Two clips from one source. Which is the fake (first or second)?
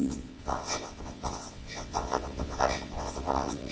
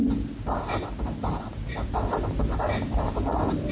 first